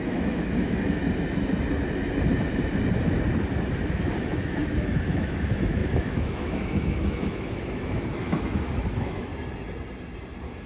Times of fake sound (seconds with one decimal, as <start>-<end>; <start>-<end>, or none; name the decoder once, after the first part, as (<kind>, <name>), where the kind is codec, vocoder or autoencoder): 0.0-1.0 (autoencoder, DAC-VAE); 3.9-9.3

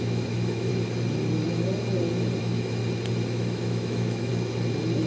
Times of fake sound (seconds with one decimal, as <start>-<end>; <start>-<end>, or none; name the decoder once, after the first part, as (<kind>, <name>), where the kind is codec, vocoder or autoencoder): 0.0-0.7 (autoencoder, DAC-VAE); 2.4-2.8; 3.3-4.3